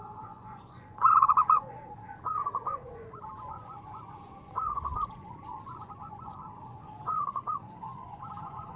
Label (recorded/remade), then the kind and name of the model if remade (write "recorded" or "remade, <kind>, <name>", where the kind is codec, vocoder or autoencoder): remade, vocoder, Vocos